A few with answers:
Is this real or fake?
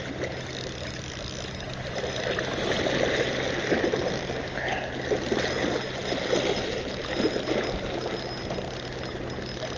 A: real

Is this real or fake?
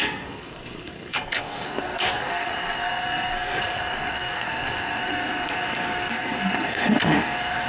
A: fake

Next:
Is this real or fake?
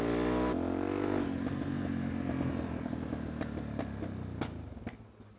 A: real